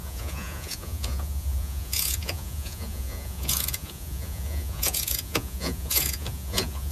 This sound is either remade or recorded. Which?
remade